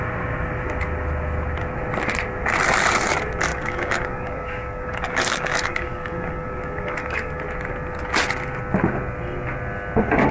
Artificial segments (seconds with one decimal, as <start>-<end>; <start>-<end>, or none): 3.5-7.4